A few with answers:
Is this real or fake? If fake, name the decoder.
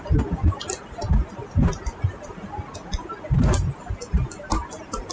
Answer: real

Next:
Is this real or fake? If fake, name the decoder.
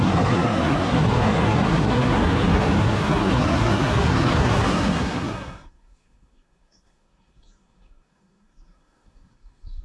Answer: fake, codec, SNAC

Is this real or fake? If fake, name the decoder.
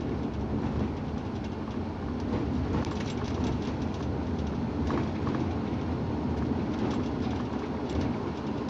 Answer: real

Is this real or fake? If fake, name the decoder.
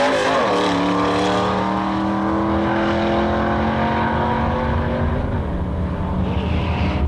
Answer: real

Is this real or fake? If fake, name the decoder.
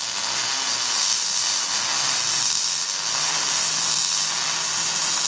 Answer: real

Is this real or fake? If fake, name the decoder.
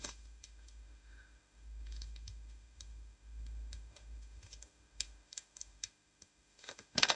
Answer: fake, autoencoder, DAC-VAE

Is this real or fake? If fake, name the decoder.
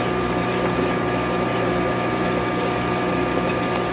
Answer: real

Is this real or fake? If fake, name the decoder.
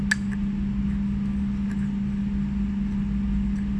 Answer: real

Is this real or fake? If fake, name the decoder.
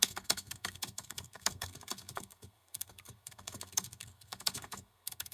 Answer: fake, codec, SNAC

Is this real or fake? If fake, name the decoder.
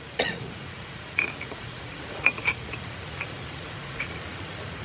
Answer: fake, vocoder, Vocos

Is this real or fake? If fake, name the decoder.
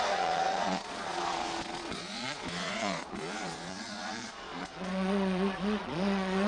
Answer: fake, vocoder, Vocos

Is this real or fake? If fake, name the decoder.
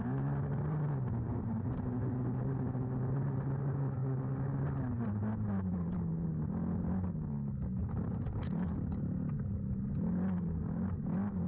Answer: real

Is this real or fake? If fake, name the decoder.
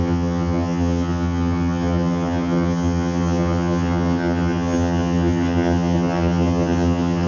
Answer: fake, vocoder, HiFi-GAN